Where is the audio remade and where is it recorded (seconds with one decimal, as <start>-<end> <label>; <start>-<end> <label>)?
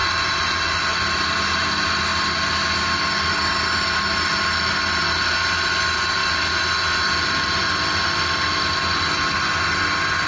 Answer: 0.0-10.3 recorded